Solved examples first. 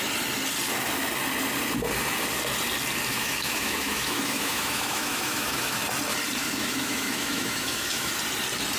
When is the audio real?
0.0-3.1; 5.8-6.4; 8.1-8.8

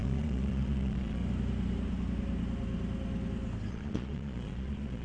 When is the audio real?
1.2-3.7

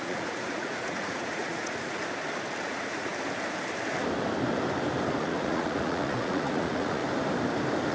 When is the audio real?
2.0-2.6; 3.1-5.2; 7.0-7.9

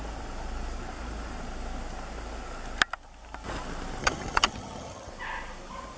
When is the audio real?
0.0-4.0; 5.1-6.0

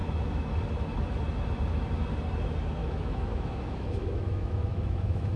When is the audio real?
0.5-2.8